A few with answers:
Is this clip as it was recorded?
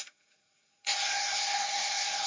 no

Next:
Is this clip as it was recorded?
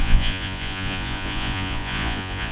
no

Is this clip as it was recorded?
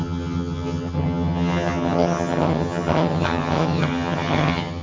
no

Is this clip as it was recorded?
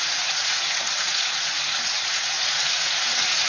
no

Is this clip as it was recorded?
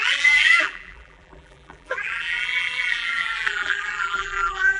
no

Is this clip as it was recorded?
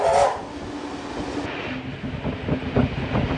yes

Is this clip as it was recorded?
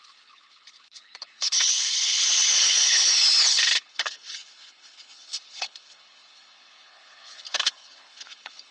no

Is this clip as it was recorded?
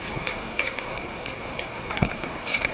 no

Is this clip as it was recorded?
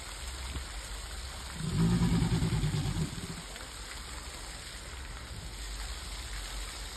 yes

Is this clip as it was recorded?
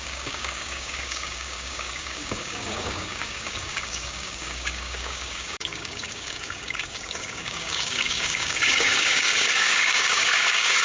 no